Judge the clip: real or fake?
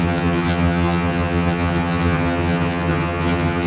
fake